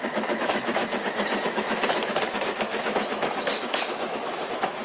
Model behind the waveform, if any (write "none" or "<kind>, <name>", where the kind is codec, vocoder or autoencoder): autoencoder, DAC-VAE